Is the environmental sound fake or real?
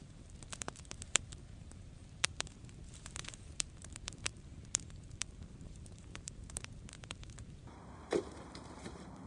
fake